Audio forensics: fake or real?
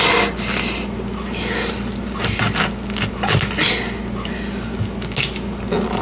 real